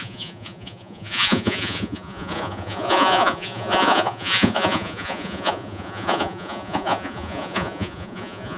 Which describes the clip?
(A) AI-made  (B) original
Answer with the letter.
A